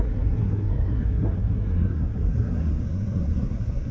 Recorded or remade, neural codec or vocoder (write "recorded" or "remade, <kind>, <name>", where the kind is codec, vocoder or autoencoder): remade, codec, SNAC